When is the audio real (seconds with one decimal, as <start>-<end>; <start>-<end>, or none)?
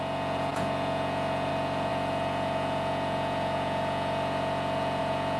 none